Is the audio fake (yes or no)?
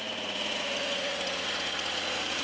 yes